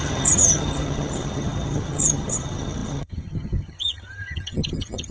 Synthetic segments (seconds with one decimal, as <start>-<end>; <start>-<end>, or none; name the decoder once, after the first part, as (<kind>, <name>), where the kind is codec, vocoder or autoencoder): 0.0-5.1 (vocoder, HiFi-GAN)